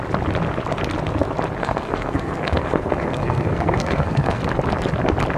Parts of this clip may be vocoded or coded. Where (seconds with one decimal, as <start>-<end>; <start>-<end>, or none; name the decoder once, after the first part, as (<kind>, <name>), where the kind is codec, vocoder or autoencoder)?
1.6-4.4 (codec, SNAC)